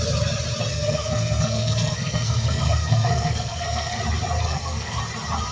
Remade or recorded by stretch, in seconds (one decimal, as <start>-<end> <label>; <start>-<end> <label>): 0.0-0.7 recorded; 0.7-4.0 remade; 4.0-4.4 recorded; 4.4-5.0 remade; 5.0-5.5 recorded